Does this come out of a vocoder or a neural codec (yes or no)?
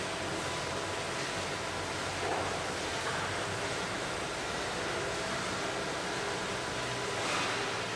no